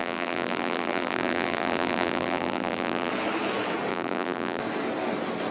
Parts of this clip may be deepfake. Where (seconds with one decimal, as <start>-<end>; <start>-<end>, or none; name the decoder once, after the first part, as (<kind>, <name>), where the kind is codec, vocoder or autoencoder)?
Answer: 0.0-3.1 (vocoder, BigVGAN v2); 3.9-4.6